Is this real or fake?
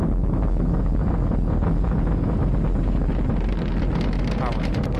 real